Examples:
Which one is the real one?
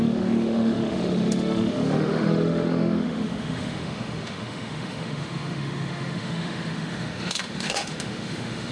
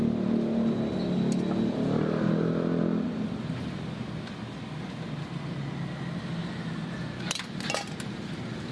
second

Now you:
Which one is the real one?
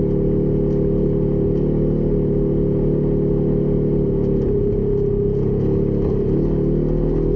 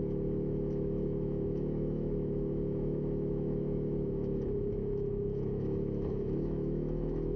first